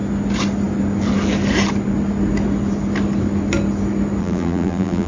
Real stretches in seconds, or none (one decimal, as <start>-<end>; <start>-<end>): 0.0-4.2